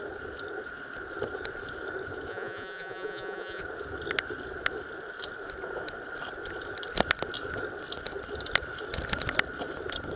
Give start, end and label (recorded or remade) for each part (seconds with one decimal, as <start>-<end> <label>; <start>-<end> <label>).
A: 0.0-2.3 recorded; 2.3-3.6 remade; 3.6-10.2 recorded